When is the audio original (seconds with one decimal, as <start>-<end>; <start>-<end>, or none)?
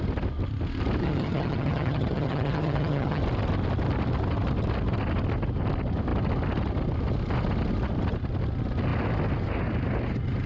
0.0-1.0; 3.2-10.5